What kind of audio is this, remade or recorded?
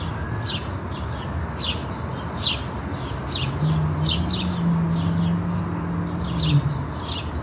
recorded